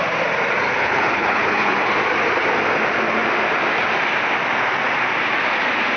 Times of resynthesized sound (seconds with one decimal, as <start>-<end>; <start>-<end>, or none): 0.8-1.9

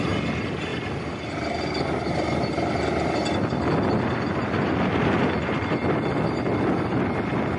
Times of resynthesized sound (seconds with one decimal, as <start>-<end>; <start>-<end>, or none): none